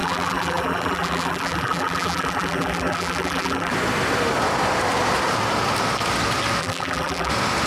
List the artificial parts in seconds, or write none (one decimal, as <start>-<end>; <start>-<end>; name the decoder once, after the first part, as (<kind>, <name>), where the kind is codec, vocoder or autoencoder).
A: 0.0-3.7 (vocoder, BigVGAN v2); 6.6-7.3